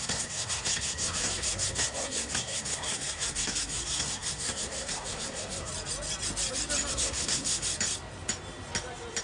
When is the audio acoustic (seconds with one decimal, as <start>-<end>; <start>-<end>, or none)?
5.7-6.9; 7.7-9.2